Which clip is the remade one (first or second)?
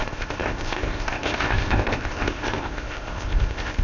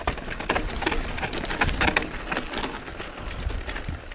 first